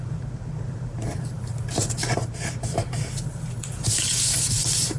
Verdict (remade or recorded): remade